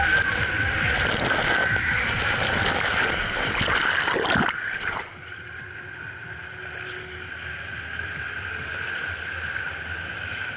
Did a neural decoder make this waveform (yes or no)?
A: no